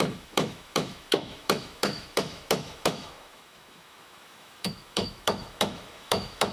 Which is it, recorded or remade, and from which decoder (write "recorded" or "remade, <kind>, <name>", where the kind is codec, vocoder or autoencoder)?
remade, autoencoder, DAC-VAE